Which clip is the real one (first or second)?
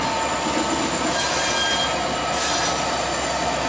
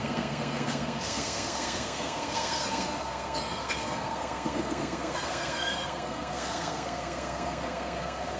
first